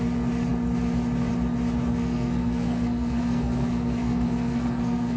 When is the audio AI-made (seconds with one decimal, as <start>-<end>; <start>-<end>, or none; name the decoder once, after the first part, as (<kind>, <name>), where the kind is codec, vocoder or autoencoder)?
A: 1.9-5.2 (codec, SNAC)